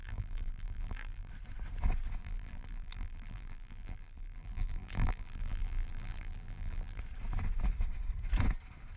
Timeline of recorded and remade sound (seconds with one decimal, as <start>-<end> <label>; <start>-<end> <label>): 0.0-1.3 remade; 1.3-2.2 recorded; 2.2-7.0 remade; 7.0-9.0 recorded